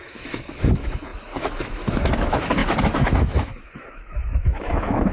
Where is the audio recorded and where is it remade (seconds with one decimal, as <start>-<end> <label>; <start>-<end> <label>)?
0.0-5.1 remade